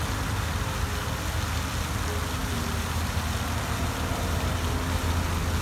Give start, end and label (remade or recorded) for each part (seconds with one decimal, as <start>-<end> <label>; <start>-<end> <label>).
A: 0.0-5.6 recorded